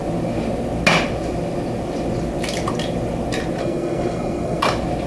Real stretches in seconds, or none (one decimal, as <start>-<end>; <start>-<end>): 0.0-3.6; 4.6-5.1

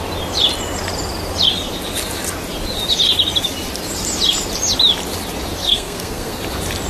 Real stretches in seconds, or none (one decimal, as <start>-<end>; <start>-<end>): 0.0-5.6; 6.4-6.9

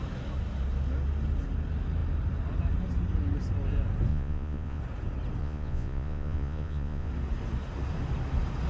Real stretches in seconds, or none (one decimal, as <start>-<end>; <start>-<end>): 0.0-4.1; 4.8-5.4; 7.1-8.7

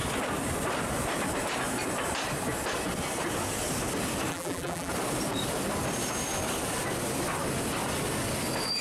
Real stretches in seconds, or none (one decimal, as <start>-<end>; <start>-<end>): 0.0-4.3; 4.9-8.8

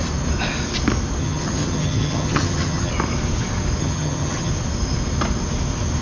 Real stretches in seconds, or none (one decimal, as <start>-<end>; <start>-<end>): 0.0-1.2; 2.9-3.8; 4.5-6.0

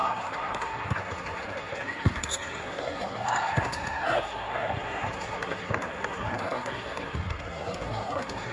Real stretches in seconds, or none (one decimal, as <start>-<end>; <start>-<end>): none

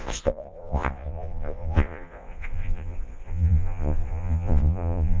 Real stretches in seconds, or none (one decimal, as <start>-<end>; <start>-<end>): none